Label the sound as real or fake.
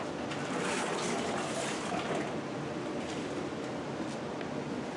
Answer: real